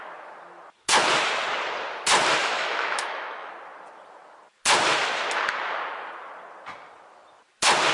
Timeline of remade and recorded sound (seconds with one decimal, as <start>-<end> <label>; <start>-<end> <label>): 0.0-2.4 recorded; 2.4-3.5 remade; 3.5-7.9 recorded